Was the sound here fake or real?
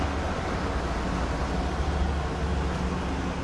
real